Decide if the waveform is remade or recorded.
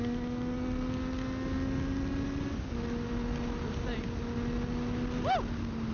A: recorded